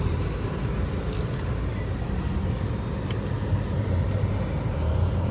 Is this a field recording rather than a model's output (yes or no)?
yes